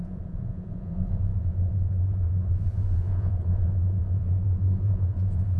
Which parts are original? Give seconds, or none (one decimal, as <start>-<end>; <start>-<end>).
none